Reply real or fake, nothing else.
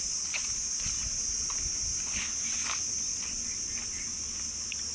real